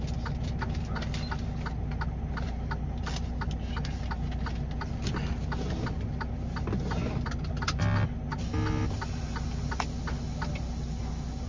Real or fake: real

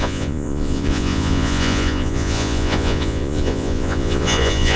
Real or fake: fake